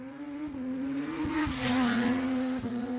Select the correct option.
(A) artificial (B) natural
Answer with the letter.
A